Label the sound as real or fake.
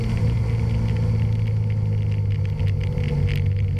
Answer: real